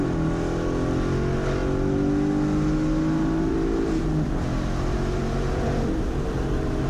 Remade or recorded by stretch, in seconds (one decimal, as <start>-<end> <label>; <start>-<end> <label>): 0.0-6.9 recorded